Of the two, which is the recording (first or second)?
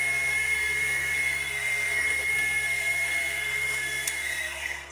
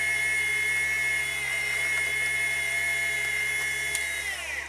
second